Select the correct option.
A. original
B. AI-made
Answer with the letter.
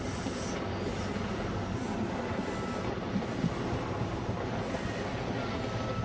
A